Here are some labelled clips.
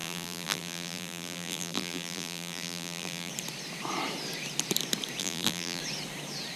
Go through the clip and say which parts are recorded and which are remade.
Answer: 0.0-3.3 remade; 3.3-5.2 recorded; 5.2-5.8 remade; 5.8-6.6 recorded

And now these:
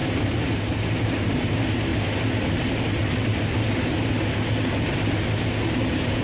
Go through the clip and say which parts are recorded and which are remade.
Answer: 0.0-1.9 remade; 1.9-5.4 recorded; 5.4-6.2 remade

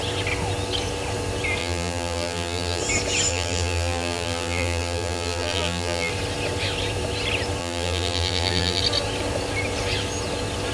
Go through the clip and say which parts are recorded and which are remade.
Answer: 0.0-1.6 recorded; 1.6-2.8 remade; 2.8-3.3 recorded; 3.3-6.1 remade; 6.1-7.6 recorded; 7.6-8.8 remade; 8.8-10.7 recorded

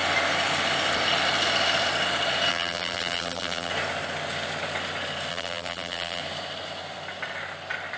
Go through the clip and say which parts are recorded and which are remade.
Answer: 0.0-2.5 recorded; 2.5-3.7 remade; 3.7-5.3 recorded; 5.3-6.2 remade; 6.2-8.0 recorded

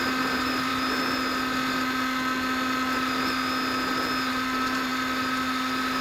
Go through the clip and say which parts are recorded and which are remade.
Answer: 0.0-0.7 remade; 0.7-4.3 recorded; 4.3-4.9 remade; 4.9-6.0 recorded

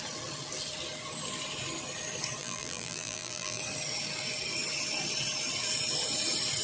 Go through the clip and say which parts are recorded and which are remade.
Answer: 0.0-2.4 recorded; 2.4-3.6 remade; 3.6-6.6 recorded